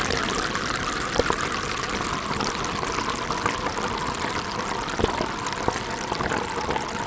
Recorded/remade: recorded